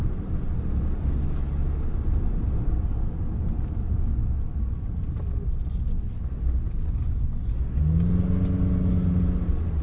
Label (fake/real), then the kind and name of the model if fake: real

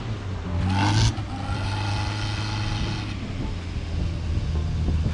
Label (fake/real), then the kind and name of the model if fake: real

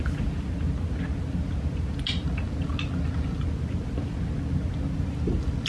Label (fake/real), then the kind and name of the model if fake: real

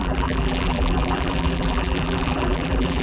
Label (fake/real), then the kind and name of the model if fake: fake, vocoder, BigVGAN v2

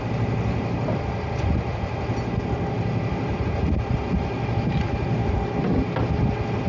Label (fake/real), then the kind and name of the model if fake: real